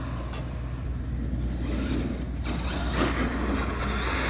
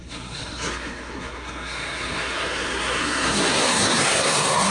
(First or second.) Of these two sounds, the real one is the first